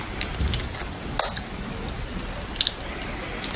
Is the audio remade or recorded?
recorded